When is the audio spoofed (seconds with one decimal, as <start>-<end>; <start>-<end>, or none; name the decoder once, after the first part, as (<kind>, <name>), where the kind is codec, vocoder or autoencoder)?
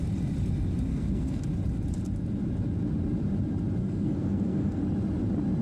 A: 0.9-1.4 (codec, SNAC); 3.8-4.8